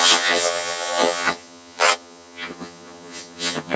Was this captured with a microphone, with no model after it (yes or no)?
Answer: no